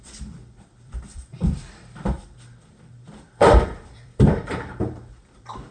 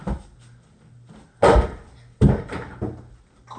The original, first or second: second